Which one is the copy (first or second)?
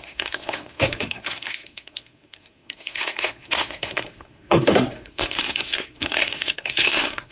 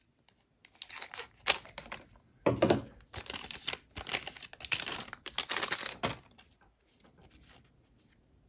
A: first